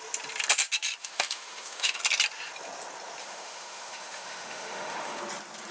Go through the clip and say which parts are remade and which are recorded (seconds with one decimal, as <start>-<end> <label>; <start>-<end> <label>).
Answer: 0.0-1.0 recorded; 1.0-2.0 remade; 2.0-3.2 recorded; 3.2-5.2 remade; 5.2-5.7 recorded